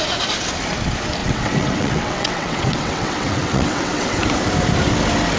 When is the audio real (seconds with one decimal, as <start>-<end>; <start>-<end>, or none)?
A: 0.0-1.2; 4.2-5.4

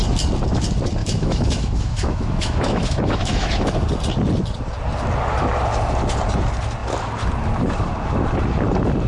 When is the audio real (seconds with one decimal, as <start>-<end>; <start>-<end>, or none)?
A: 0.0-1.0; 3.7-9.1

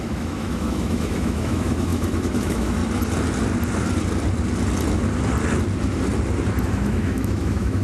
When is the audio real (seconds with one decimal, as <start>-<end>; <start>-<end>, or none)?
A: 2.8-6.6

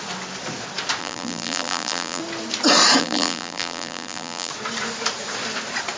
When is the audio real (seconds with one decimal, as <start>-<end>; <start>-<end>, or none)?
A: 0.0-1.0; 2.2-3.0; 4.5-6.0